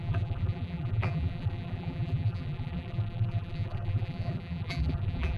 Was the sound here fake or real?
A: fake